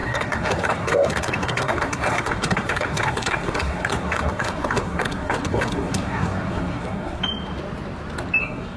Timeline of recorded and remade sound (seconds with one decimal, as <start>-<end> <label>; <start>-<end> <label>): 0.0-7.2 remade; 7.2-8.4 recorded; 8.4-8.8 remade